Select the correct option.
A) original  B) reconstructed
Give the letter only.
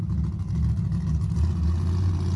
A